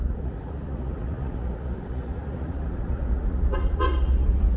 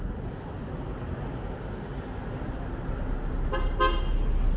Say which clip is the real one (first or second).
second